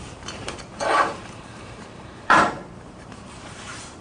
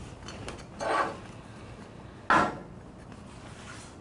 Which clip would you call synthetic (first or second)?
first